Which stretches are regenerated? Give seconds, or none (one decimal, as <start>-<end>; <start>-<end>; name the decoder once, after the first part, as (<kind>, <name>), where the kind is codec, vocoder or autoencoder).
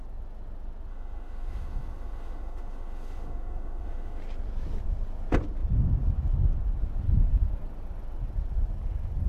0.9-4.2 (autoencoder, DAC-VAE)